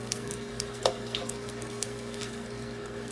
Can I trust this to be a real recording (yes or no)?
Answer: no